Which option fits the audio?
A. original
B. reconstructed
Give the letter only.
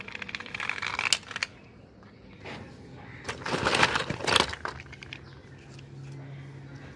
A